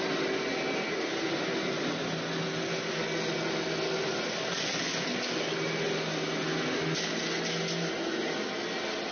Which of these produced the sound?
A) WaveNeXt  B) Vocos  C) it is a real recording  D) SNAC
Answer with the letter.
C